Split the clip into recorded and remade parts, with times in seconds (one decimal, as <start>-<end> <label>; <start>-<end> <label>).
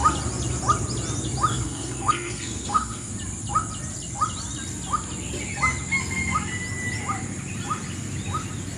0.0-1.5 recorded; 1.5-3.1 remade; 3.1-8.8 recorded